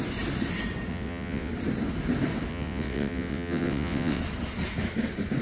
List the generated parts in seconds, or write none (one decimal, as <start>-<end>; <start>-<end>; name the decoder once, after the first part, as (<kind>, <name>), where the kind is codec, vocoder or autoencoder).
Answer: 0.9-1.5 (vocoder, WaveNeXt); 2.5-4.2